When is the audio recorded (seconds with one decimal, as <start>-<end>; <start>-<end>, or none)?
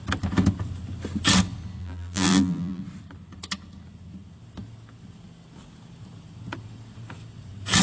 0.0-1.8; 2.8-7.8